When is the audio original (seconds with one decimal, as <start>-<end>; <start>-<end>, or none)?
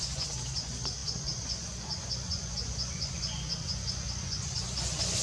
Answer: none